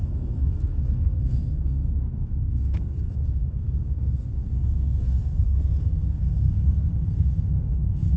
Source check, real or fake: fake